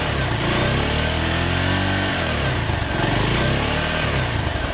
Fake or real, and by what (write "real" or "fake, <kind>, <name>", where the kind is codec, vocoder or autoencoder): real